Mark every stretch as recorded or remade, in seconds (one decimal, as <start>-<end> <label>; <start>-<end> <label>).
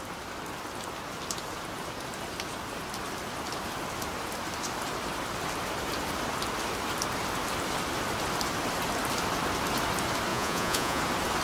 0.0-10.3 recorded; 10.3-11.0 remade; 11.0-11.4 recorded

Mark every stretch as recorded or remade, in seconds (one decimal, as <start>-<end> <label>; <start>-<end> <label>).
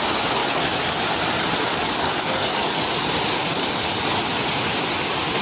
0.0-0.4 recorded; 0.4-1.0 remade; 1.0-1.7 recorded; 1.7-2.6 remade; 2.6-3.4 recorded; 3.4-4.0 remade; 4.0-5.4 recorded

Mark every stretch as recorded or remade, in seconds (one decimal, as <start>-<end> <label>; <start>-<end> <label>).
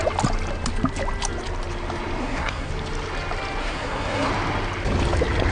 0.0-2.2 recorded; 2.2-2.7 remade; 2.7-3.6 recorded; 3.6-4.3 remade; 4.3-5.5 recorded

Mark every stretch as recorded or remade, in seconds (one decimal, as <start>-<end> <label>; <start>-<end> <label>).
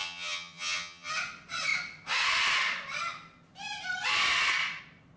0.0-1.1 remade; 1.1-5.2 recorded